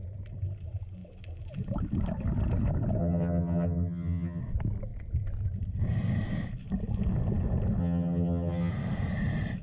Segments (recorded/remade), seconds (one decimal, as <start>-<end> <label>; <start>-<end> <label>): 0.0-3.0 recorded; 3.0-4.4 remade; 4.4-7.8 recorded; 7.8-8.7 remade; 8.7-9.6 recorded